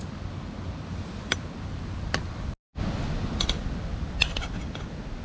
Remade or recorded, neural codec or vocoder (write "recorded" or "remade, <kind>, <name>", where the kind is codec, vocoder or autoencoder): recorded